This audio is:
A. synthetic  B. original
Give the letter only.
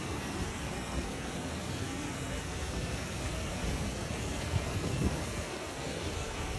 A